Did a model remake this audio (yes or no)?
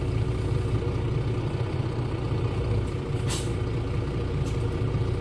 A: no